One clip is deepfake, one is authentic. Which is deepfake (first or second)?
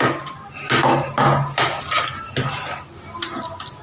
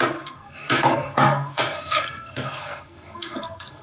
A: second